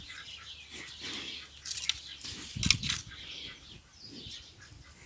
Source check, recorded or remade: recorded